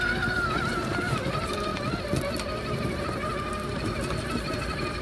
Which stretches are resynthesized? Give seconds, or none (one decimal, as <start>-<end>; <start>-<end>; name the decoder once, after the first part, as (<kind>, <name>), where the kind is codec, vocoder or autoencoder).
0.0-1.7 (vocoder, BigVGAN v2); 3.0-5.0